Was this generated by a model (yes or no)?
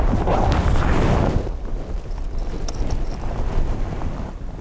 no